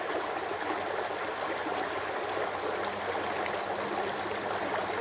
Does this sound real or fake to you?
real